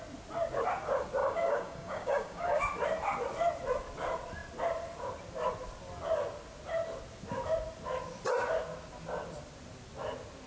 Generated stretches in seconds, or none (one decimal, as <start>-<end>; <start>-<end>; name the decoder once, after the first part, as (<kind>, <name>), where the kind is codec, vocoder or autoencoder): 1.2-2.6 (codec, DAC)